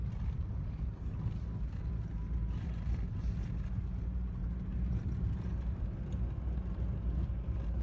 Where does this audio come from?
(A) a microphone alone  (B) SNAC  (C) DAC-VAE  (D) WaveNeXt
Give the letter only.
A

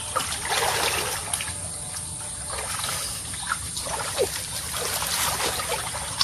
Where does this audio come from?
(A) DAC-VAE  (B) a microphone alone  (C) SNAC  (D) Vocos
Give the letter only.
B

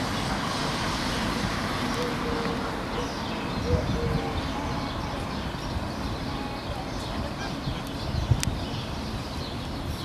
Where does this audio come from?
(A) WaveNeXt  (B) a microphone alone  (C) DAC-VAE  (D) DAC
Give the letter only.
B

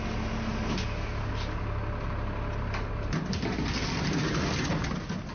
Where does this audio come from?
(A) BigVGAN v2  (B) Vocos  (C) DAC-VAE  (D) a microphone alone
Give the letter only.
D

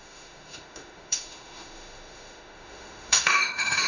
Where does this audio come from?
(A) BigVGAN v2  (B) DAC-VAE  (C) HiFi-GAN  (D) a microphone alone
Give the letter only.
B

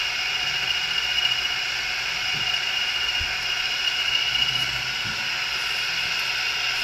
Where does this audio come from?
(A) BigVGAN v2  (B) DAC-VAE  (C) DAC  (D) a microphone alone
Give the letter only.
D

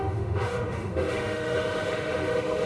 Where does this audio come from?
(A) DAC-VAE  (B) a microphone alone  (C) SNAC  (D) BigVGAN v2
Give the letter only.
A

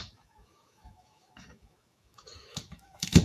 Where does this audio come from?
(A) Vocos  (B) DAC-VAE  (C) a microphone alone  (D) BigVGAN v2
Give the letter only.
B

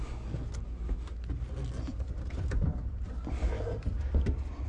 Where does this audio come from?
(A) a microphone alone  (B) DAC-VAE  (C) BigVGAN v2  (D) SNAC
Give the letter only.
A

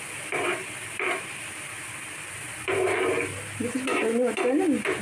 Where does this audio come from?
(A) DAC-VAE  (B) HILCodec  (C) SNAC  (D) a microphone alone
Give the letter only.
D